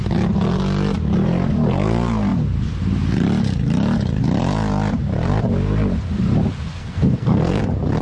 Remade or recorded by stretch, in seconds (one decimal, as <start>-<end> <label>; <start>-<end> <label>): 0.0-6.8 recorded; 6.8-7.6 remade; 7.6-8.0 recorded